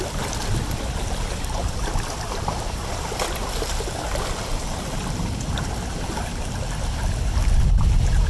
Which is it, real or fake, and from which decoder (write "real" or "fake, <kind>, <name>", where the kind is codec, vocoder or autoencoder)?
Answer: real